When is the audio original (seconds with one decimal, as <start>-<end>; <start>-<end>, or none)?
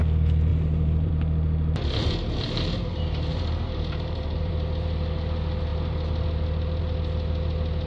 0.0-0.5; 1.1-2.0; 2.9-3.3; 4.5-7.9